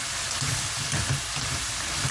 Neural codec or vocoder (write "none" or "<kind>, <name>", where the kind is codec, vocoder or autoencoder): none